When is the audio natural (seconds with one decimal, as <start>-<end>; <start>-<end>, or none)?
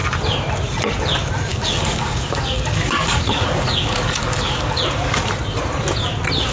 0.0-1.5; 4.8-6.5